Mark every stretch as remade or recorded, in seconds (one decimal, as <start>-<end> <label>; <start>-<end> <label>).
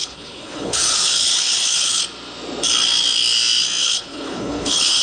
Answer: 0.0-2.0 remade; 2.0-3.8 recorded; 3.8-5.0 remade